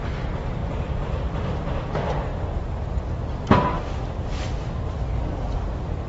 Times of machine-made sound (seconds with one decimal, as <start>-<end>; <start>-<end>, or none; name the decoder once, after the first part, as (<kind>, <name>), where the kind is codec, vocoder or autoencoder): 0.6-1.7 (vocoder, BigVGAN v2)